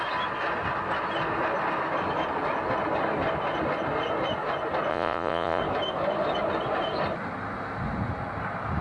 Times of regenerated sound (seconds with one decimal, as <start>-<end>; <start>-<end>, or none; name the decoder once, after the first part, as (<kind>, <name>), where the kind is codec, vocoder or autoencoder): 4.9-5.6 (vocoder, Vocos)